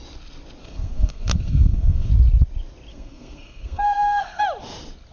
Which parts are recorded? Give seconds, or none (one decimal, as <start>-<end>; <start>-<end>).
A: 0.0-0.6; 2.1-2.9; 4.4-5.1